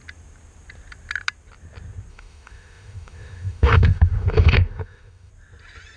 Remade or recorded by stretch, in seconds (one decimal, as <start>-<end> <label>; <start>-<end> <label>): 0.0-2.1 recorded; 2.1-5.3 remade; 5.3-6.0 recorded